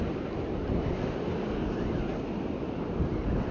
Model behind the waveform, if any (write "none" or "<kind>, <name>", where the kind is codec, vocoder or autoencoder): none